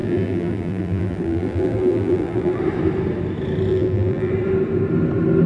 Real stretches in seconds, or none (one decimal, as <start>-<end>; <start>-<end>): 2.6-3.7; 4.3-5.5